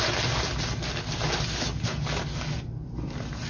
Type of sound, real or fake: real